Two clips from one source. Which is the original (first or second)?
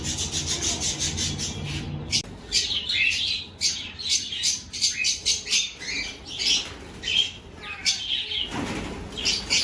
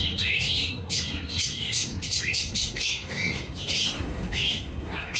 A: first